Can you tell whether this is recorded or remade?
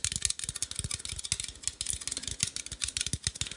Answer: recorded